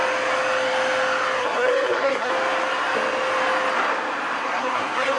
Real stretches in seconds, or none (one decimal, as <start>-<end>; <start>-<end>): 0.0-1.4; 2.3-4.4